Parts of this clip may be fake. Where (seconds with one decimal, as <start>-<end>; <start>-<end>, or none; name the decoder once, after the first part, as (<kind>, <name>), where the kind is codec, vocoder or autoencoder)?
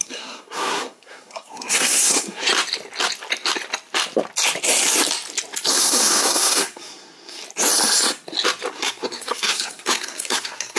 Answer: 0.0-2.5 (codec, SNAC); 5.7-7.4; 8.7-10.8